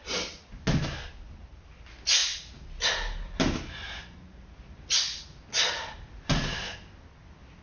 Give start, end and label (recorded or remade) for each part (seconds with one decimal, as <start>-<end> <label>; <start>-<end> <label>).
0.0-7.6 recorded

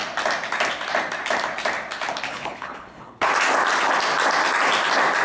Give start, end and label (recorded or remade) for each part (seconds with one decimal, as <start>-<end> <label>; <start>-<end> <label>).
0.0-2.3 recorded; 2.3-3.3 remade; 3.3-5.2 recorded

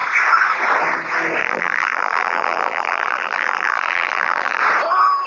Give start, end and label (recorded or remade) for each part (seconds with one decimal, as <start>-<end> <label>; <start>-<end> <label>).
0.0-1.4 recorded; 1.4-4.6 remade; 4.6-5.3 recorded

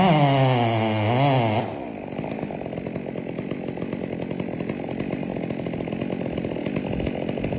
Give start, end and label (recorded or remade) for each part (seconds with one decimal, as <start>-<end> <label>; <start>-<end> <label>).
0.0-7.6 recorded

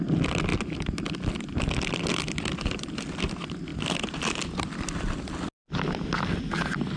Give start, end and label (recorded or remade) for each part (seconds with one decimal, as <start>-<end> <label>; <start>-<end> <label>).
0.0-7.0 recorded